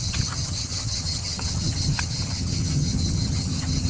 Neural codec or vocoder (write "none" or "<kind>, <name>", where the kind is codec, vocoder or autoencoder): vocoder, HiFi-GAN